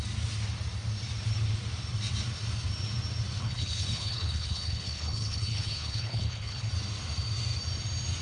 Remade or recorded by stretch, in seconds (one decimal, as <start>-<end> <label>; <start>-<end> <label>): 0.0-3.4 recorded; 3.4-6.7 remade; 6.7-8.2 recorded